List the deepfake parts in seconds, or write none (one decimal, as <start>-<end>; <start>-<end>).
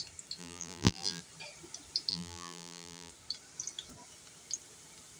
0.4-1.2; 2.1-3.1